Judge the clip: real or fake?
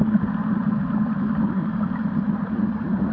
real